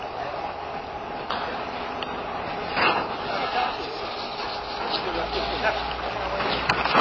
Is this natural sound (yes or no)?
yes